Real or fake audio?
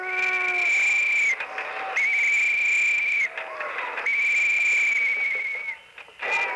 real